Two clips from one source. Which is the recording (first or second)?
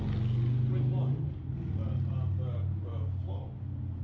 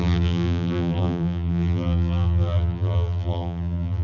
first